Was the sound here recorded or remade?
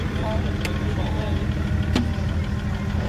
recorded